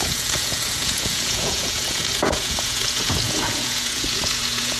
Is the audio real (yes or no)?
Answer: no